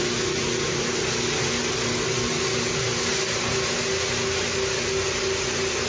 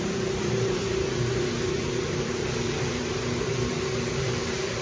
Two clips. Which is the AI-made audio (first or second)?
second